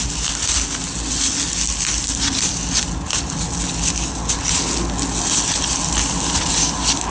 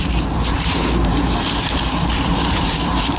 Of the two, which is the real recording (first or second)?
first